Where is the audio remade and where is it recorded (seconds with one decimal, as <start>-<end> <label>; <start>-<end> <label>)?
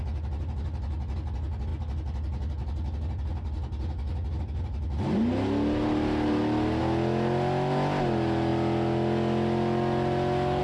0.0-10.6 recorded